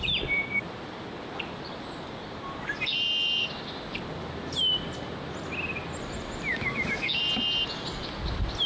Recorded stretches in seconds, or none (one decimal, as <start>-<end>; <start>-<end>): 0.0-6.5; 7.2-8.7